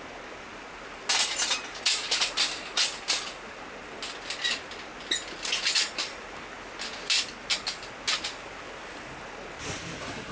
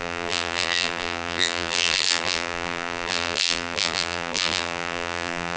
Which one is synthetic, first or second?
second